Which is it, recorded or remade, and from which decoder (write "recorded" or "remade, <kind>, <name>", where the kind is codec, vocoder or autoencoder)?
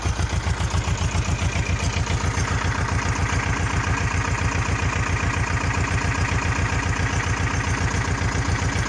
recorded